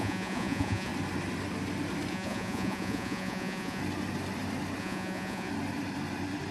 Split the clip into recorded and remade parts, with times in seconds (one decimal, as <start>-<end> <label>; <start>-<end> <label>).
0.0-0.9 remade; 0.9-2.1 recorded; 2.1-3.8 remade; 3.8-4.8 recorded; 4.8-5.5 remade; 5.5-6.5 recorded